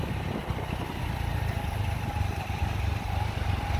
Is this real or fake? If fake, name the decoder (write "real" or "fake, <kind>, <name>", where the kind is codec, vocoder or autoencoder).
fake, vocoder, BigVGAN v2